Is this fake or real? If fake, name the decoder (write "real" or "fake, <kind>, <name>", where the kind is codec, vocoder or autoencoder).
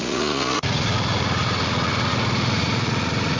fake, vocoder, Vocos